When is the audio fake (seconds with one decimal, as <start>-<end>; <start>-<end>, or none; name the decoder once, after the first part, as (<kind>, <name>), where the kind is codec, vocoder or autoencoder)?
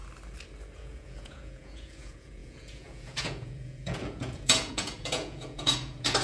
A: 0.7-6.2 (vocoder, Vocos)